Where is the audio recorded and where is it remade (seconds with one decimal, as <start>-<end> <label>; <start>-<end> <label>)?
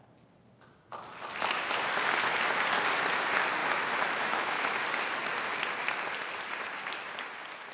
0.0-3.6 recorded; 3.6-4.8 remade; 4.8-7.7 recorded